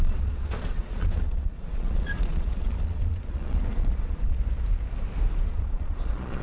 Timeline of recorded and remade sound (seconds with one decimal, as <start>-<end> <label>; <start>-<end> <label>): 0.0-4.4 remade; 4.4-5.5 recorded; 5.5-6.4 remade